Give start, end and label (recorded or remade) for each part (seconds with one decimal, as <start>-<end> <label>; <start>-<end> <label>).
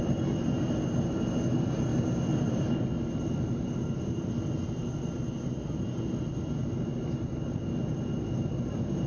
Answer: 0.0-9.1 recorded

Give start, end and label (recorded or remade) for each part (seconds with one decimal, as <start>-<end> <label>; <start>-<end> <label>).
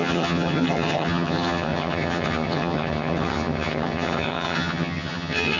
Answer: 0.0-5.6 remade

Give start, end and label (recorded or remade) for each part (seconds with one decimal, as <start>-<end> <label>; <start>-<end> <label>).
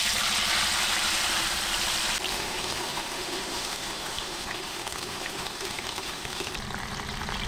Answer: 0.0-2.3 recorded; 2.3-6.5 remade; 6.5-7.5 recorded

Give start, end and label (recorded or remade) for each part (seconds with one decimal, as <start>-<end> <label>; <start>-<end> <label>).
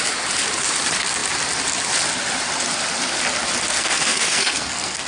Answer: 0.0-3.7 recorded; 3.7-5.1 remade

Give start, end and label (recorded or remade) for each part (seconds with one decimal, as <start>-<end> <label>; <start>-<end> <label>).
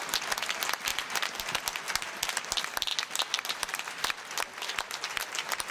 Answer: 0.0-2.9 recorded; 2.9-4.4 remade; 4.4-5.7 recorded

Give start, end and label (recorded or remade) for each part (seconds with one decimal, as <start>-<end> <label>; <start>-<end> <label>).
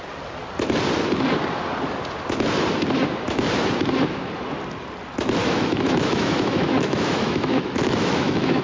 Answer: 0.0-5.4 recorded; 5.4-8.6 remade